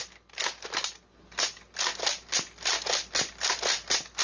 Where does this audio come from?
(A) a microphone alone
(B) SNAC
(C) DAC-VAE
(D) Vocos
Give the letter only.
A